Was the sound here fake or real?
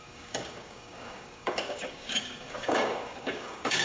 fake